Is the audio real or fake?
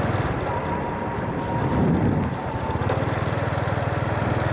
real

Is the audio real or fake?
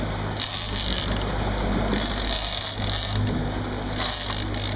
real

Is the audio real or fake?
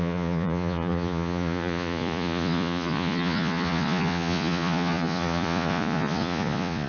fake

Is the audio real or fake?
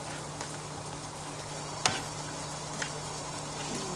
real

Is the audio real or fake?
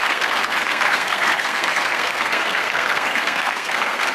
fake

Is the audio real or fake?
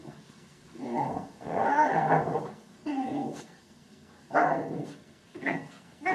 fake